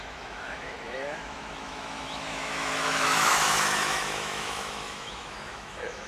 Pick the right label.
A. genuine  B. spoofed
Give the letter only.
B